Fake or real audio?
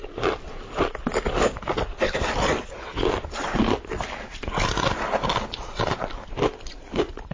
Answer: real